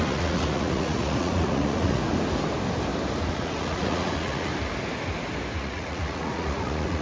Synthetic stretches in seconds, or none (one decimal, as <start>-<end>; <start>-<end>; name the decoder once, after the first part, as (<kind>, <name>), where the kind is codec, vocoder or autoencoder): 0.0-2.0 (vocoder, Vocos); 3.3-4.5; 5.6-7.0